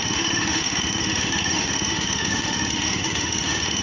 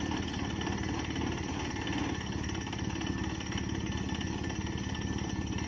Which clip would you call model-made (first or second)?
first